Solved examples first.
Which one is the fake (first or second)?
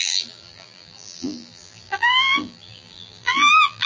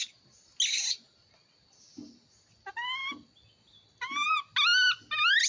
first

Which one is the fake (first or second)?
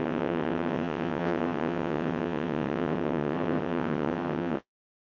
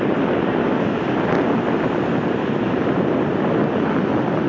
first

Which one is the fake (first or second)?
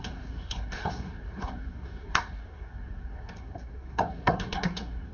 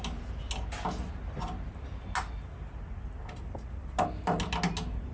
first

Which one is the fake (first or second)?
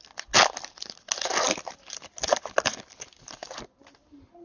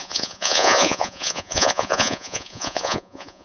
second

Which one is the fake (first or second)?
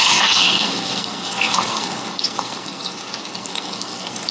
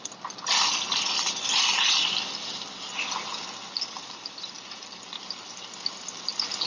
first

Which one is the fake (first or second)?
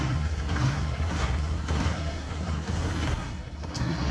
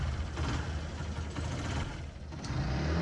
first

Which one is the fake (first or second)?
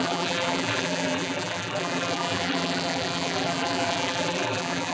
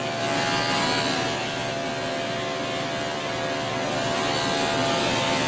first